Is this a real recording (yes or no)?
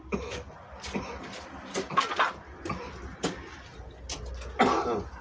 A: yes